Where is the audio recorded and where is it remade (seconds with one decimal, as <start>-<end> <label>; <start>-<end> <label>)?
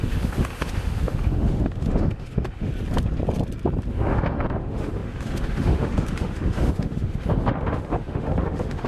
0.0-2.7 remade; 2.7-3.9 recorded; 3.9-8.9 remade